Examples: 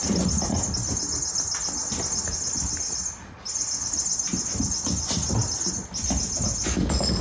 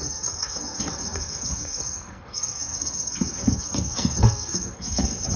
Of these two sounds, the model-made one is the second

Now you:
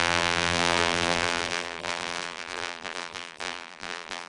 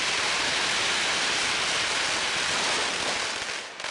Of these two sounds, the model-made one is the first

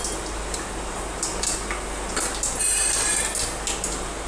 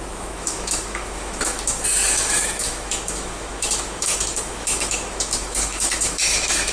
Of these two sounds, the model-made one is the second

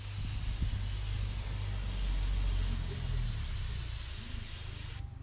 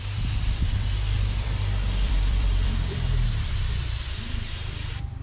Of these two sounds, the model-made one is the second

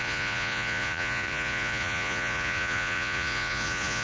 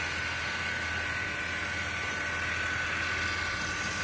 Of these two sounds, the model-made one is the first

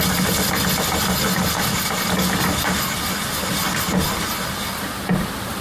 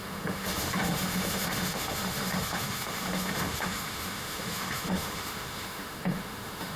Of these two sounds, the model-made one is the second